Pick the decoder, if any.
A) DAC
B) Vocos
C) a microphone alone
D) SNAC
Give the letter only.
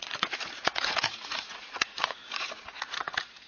B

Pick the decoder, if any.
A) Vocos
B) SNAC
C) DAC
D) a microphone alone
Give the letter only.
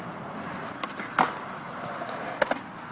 D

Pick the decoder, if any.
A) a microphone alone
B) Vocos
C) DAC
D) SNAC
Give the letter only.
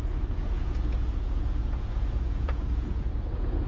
B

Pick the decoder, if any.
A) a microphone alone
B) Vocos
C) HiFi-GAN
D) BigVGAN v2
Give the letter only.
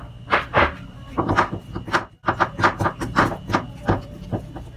A